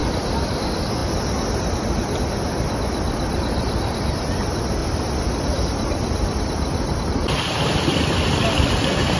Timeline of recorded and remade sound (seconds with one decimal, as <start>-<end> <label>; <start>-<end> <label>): 0.0-0.6 remade; 0.6-4.8 recorded; 4.8-6.4 remade; 6.4-9.2 recorded